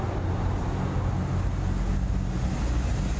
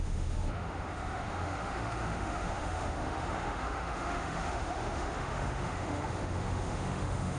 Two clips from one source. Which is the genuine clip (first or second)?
first